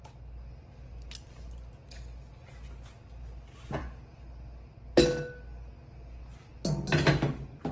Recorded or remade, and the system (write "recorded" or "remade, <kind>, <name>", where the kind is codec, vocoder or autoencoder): recorded